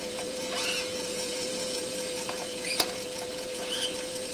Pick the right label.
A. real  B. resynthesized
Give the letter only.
B